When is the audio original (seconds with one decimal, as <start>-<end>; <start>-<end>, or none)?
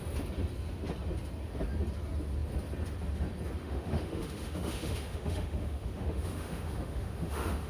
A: 0.0-3.6